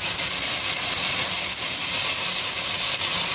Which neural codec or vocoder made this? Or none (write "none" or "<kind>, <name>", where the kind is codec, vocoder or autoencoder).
vocoder, BigVGAN v2